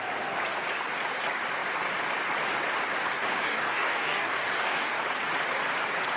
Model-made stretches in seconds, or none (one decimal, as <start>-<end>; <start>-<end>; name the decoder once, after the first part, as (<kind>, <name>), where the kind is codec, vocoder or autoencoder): 3.4-5.0 (codec, DAC)